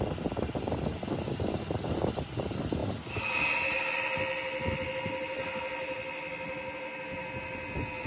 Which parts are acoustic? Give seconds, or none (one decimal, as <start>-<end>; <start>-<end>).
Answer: 0.0-8.1